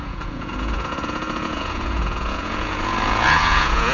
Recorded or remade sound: remade